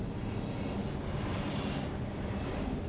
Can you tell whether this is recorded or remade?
recorded